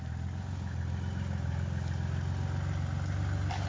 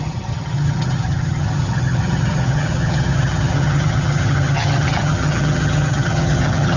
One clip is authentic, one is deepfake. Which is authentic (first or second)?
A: first